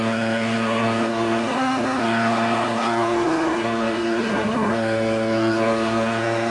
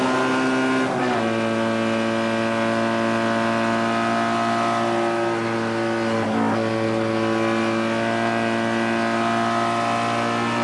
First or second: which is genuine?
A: second